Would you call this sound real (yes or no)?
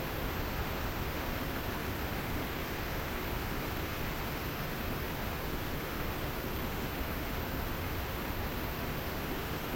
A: no